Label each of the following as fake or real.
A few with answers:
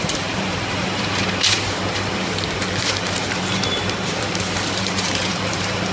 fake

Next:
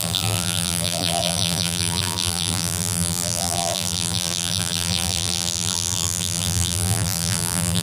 fake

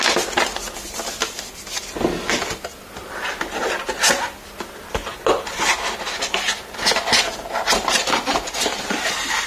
real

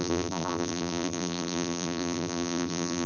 fake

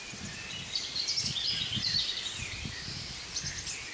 real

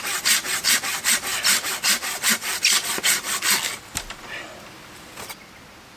real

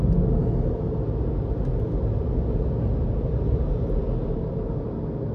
real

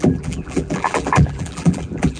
fake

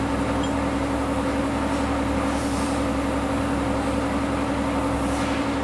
real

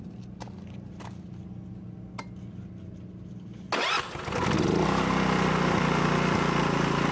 real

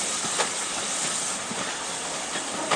real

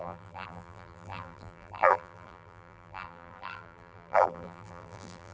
fake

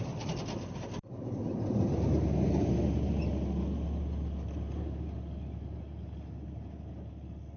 real